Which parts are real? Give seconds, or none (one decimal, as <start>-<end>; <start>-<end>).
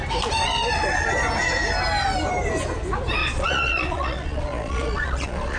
0.0-3.2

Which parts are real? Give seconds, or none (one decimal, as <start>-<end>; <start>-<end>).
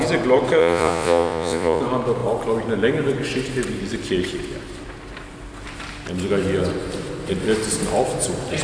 0.0-0.6; 1.8-8.6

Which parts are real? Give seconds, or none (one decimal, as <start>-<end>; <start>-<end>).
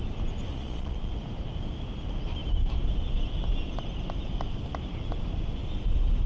0.0-0.5; 1.1-6.3